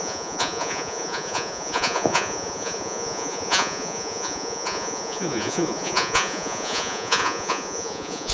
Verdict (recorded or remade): remade